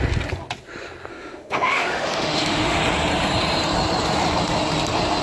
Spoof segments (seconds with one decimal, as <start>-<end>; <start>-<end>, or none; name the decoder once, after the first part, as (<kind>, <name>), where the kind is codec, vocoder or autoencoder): 1.1-2.8 (autoencoder, DAC-VAE)